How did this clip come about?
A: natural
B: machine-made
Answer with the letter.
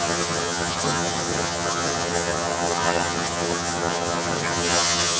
B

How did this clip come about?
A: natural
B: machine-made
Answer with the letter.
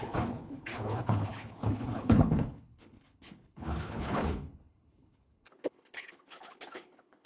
B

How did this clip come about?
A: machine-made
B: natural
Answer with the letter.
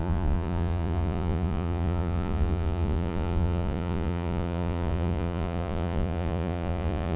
A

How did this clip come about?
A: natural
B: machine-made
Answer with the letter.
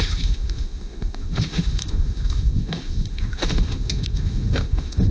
B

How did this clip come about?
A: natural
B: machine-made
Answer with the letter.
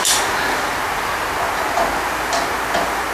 A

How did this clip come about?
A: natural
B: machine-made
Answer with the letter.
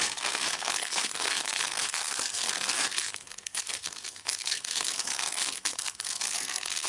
B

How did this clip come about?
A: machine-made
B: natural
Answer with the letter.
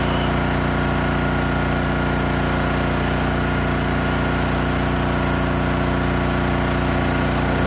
B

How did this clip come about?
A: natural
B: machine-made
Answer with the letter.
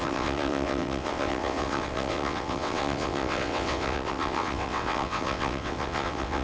B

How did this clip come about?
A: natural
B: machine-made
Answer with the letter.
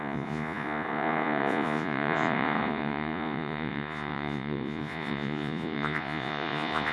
B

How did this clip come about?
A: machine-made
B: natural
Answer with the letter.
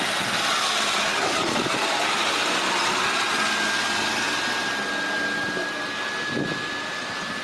B